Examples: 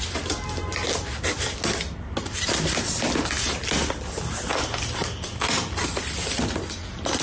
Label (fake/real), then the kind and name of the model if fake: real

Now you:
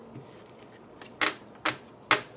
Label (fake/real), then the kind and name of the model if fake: real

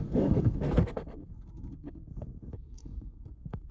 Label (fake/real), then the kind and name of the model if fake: fake, codec, SNAC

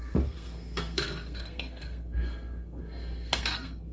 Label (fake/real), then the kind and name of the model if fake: fake, codec, SNAC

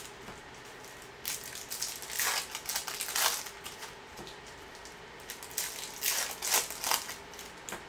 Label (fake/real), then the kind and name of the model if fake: real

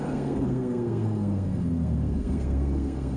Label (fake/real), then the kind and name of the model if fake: fake, codec, SNAC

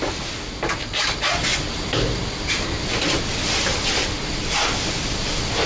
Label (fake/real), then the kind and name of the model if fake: real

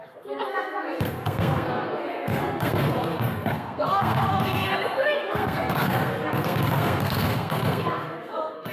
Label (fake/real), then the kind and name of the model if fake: fake, codec, SNAC